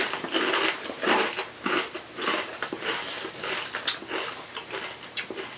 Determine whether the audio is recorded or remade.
recorded